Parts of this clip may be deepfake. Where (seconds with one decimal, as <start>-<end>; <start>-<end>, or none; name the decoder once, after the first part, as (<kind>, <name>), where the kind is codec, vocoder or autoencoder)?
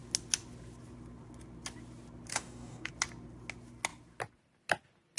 2.3-2.9 (codec, DAC)